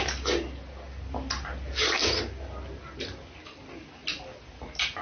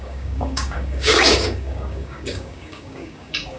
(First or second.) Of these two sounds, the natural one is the first